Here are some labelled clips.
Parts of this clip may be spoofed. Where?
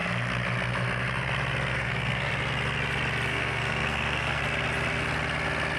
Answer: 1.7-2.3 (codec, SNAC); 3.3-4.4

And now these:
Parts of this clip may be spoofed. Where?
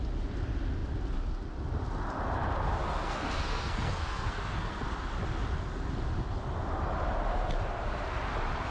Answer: 2.8-4.8 (codec, SNAC)